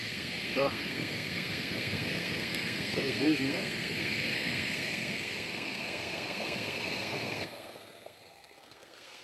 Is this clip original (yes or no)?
no